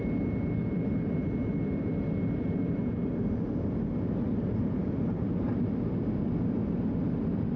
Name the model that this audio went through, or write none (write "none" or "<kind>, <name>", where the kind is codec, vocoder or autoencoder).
none